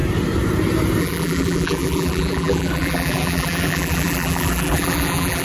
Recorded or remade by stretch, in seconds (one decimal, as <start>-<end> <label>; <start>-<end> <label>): 0.0-1.0 recorded; 1.0-5.4 remade